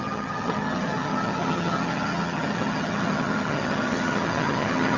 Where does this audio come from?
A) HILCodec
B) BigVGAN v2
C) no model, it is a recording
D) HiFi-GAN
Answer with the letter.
D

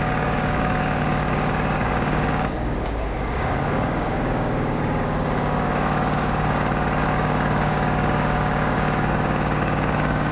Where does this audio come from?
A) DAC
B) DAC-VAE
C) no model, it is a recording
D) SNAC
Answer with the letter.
A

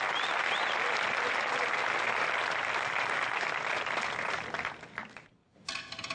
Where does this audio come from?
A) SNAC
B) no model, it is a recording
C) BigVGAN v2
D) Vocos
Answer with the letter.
B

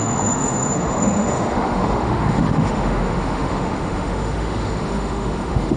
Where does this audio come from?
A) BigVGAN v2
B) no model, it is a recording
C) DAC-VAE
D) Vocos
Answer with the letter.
C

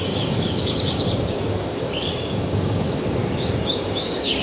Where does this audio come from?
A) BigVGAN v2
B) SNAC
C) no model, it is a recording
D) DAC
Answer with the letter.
D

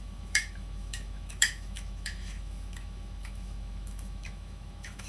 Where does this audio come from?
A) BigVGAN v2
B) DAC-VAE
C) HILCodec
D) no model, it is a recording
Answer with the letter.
B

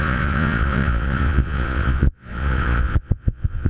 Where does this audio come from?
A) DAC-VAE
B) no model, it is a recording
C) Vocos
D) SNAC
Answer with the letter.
C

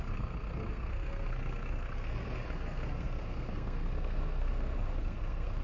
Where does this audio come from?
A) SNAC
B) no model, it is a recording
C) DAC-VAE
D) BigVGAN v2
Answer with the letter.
A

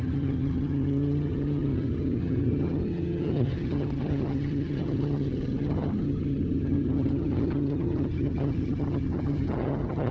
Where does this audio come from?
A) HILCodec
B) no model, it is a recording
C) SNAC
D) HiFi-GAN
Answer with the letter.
D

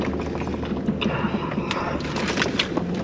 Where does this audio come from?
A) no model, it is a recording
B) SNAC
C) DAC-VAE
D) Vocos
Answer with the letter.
A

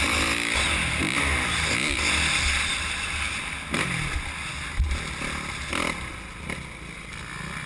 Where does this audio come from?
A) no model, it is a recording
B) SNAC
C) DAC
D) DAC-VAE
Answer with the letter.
A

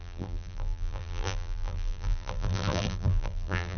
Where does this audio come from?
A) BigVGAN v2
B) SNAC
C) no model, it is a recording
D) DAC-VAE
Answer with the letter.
A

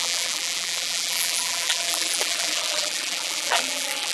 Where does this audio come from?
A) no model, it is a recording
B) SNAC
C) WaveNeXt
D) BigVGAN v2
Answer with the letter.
D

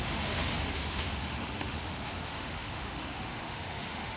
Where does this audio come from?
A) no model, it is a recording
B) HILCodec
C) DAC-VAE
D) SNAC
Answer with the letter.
C